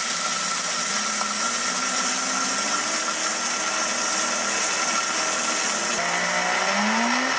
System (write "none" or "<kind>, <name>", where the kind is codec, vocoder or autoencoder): none